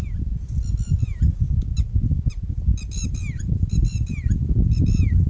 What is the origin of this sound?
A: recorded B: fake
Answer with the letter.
A